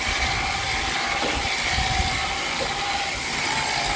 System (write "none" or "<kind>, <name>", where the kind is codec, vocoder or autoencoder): none